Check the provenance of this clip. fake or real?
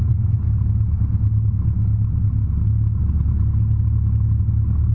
real